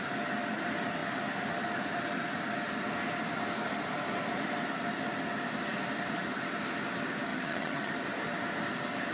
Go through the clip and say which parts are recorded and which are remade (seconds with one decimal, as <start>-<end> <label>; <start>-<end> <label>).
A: 0.0-7.3 recorded; 7.3-7.9 remade; 7.9-9.1 recorded